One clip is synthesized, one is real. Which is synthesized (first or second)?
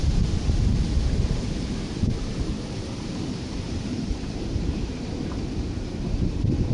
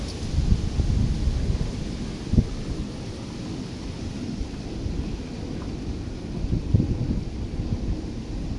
first